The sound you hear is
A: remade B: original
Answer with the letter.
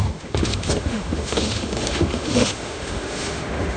A